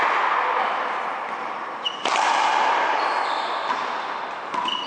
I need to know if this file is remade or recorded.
recorded